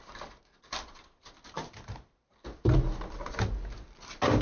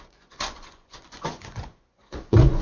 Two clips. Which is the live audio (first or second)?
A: first